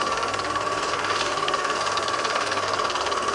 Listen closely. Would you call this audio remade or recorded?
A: remade